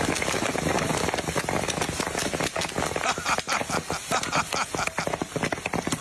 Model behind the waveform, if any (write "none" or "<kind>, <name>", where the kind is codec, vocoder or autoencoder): none